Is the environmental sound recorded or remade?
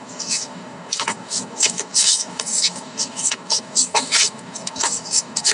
remade